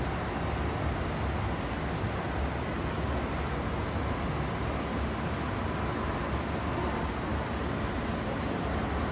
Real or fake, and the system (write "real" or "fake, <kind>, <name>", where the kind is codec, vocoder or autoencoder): real